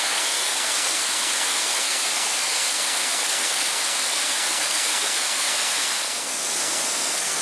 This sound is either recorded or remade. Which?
remade